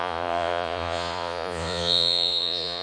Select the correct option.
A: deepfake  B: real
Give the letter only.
A